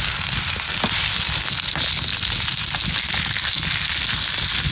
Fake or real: real